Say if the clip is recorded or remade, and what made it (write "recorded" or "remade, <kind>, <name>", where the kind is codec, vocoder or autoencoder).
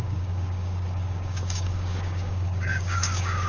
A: remade, codec, DAC